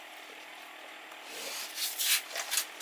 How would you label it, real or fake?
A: real